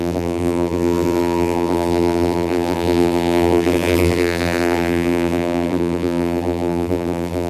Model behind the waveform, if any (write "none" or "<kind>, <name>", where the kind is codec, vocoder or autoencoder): vocoder, BigVGAN v2